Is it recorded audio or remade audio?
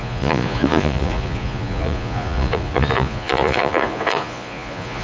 remade